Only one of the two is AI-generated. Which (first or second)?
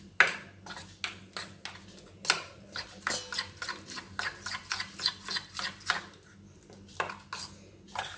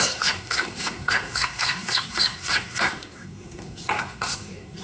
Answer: second